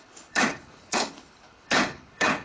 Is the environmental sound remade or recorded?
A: remade